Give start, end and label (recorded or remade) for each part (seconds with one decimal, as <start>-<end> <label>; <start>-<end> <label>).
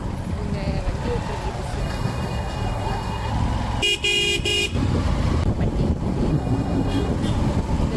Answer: 0.0-1.8 recorded; 1.8-3.3 remade; 3.3-6.3 recorded; 6.3-7.1 remade; 7.1-8.0 recorded